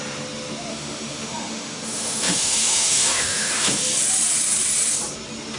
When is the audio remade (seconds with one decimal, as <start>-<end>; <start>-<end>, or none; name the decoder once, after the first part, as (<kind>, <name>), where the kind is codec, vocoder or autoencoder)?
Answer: 0.7-3.8 (autoencoder, DAC-VAE)